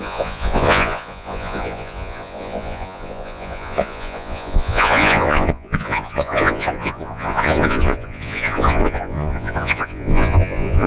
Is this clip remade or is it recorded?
remade